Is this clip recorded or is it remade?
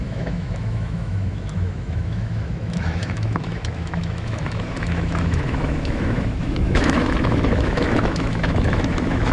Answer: remade